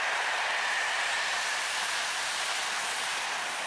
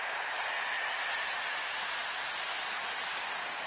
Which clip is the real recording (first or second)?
second